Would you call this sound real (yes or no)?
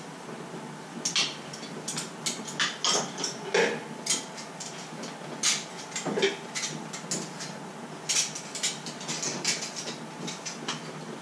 yes